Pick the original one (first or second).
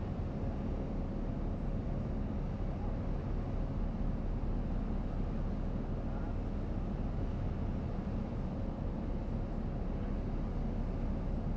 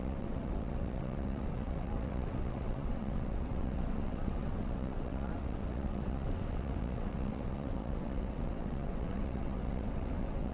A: first